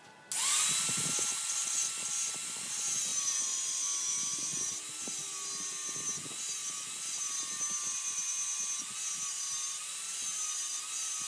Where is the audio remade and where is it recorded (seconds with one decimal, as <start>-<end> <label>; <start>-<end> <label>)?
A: 0.0-3.1 recorded; 3.1-4.8 remade; 4.8-6.6 recorded; 6.6-7.2 remade; 7.2-11.3 recorded